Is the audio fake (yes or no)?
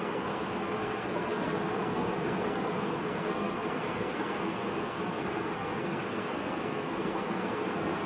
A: yes